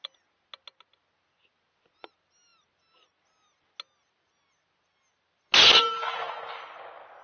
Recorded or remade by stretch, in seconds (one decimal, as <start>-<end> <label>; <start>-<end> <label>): 0.0-7.2 recorded